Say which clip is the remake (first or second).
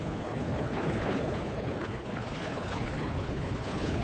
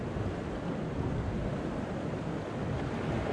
first